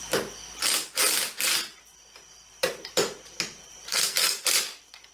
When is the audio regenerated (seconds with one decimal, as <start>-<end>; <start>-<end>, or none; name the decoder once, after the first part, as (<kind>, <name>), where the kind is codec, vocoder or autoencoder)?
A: 3.9-4.4 (codec, SNAC)